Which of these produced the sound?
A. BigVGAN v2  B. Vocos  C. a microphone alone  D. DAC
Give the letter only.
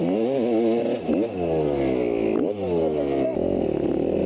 C